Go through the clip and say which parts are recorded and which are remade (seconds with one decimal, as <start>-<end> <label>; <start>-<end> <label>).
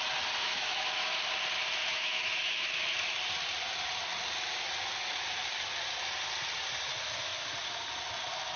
0.0-0.4 recorded; 0.4-1.2 remade; 1.2-1.9 recorded; 1.9-2.7 remade; 2.7-8.6 recorded